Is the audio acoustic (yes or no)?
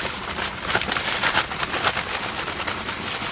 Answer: yes